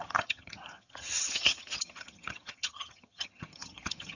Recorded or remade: remade